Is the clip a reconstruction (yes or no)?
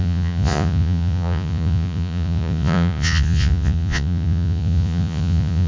yes